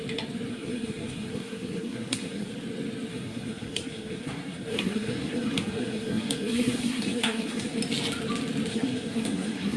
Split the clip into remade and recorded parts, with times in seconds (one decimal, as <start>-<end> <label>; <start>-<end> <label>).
0.0-0.5 recorded; 0.5-2.5 remade; 2.5-3.1 recorded; 3.1-7.8 remade; 7.8-8.7 recorded; 8.7-9.8 remade